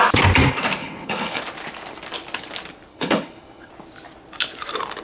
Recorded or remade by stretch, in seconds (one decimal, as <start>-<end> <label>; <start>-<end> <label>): 0.0-0.8 recorded; 0.8-1.4 remade; 1.4-2.9 recorded; 2.9-3.7 remade; 3.7-5.0 recorded